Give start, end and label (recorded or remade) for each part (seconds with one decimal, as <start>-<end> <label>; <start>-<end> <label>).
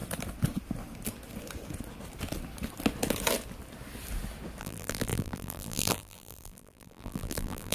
0.0-4.6 recorded; 4.6-7.7 remade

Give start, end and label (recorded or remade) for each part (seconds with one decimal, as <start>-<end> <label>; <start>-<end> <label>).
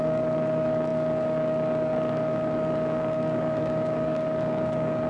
0.0-5.1 remade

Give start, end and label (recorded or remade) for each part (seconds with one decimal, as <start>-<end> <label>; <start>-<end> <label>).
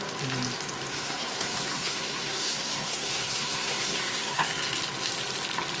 0.0-0.9 recorded; 0.9-4.4 remade; 4.4-5.8 recorded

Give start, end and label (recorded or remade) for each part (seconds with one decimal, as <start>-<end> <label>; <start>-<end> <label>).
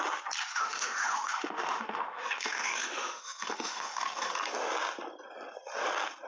0.0-0.5 recorded; 0.5-4.3 remade; 4.3-6.3 recorded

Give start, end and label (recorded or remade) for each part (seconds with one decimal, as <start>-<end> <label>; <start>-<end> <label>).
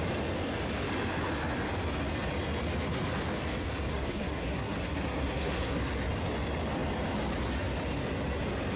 0.0-3.9 recorded; 3.9-5.8 remade; 5.8-8.8 recorded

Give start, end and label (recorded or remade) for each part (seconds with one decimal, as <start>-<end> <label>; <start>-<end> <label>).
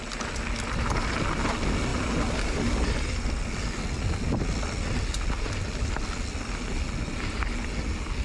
0.0-8.2 recorded